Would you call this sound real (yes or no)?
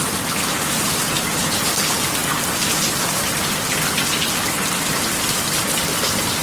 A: yes